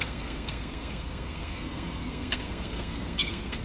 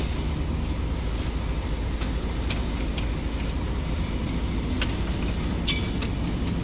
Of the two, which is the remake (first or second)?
first